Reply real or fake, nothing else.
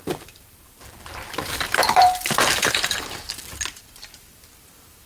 fake